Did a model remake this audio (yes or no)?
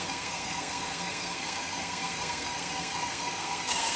yes